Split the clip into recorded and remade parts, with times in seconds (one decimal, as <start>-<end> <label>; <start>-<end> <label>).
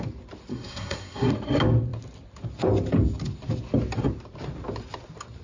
0.0-0.5 recorded; 0.5-1.3 remade; 1.3-5.4 recorded